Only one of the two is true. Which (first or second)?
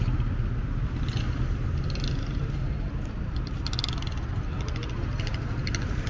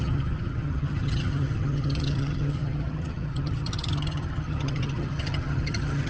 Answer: first